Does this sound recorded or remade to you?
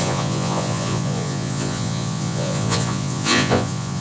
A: remade